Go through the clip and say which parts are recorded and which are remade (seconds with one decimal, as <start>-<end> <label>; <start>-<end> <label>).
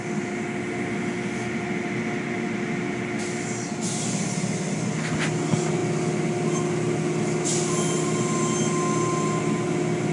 0.0-10.1 recorded